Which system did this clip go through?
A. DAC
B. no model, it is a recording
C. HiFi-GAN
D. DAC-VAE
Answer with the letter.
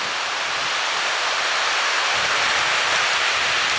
B